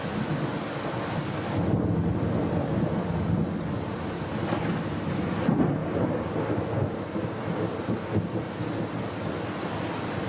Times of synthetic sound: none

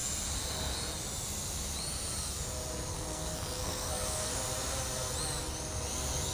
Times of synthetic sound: 2.9-4.3 (codec, SNAC)

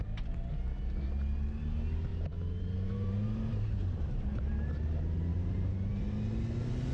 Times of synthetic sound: 2.1-4.5 (vocoder, BigVGAN v2); 5.3-6.0

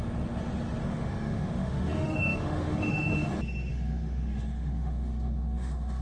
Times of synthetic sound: 0.8-3.3 (autoencoder, DAC-VAE); 3.7-6.0

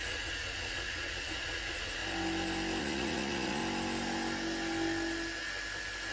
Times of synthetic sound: 0.0-2.0 (vocoder, Vocos); 2.8-3.6

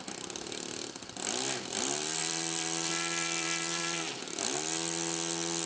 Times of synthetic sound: 2.2-4.2 (vocoder, BigVGAN v2)

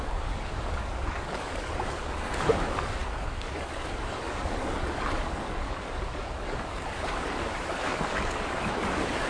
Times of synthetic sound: 0.0-9.3 (codec, DAC)

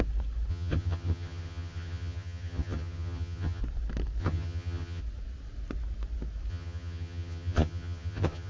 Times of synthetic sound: 0.5-3.6 (vocoder, HiFi-GAN); 4.2-5.0; 6.5-8.5